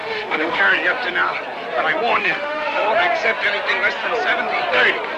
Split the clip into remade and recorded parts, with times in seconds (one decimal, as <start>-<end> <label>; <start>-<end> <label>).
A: 0.0-0.6 remade; 0.6-2.2 recorded; 2.2-2.9 remade; 2.9-5.2 recorded